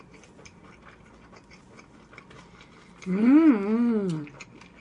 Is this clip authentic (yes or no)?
yes